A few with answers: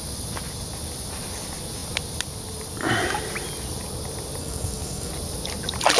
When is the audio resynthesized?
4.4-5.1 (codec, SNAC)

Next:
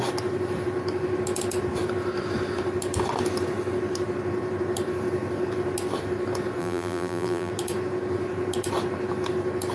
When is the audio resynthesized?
6.6-7.5 (vocoder, BigVGAN v2)

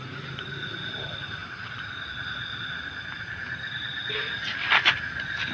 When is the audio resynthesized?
none

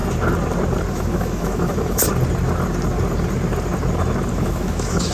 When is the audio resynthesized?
0.9-2.0 (autoencoder, DAC-VAE); 4.3-5.1

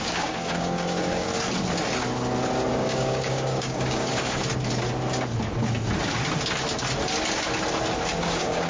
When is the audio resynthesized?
0.0-1.3 (codec, DAC); 2.7-4.4; 8.2-8.7

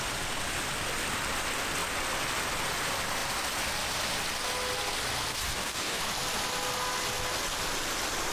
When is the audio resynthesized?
5.3-6.0 (codec, DAC)

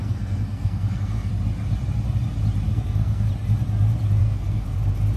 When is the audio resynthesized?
0.0-1.3 (codec, SNAC); 2.7-3.3; 4.2-4.8